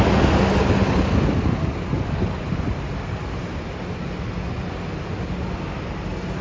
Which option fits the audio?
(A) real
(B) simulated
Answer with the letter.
A